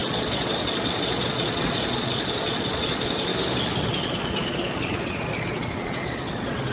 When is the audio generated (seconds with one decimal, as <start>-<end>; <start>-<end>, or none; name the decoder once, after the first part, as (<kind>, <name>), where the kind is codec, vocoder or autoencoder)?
0.0-3.3 (vocoder, Vocos); 3.8-6.7